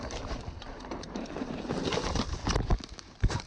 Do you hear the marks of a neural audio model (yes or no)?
yes